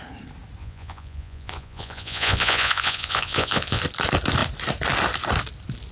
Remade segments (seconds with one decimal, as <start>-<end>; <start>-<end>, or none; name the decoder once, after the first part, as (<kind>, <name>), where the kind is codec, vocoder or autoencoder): 0.6-3.8 (vocoder, Vocos)